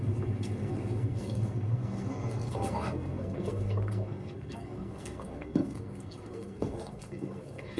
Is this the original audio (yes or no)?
no